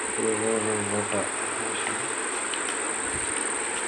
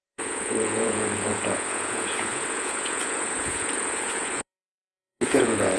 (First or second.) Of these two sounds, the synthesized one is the second